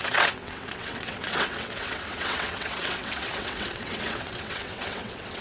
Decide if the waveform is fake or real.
fake